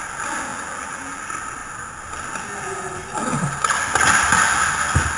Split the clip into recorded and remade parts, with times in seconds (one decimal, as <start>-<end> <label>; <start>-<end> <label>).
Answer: 0.0-0.5 recorded; 0.5-1.2 remade; 1.2-5.2 recorded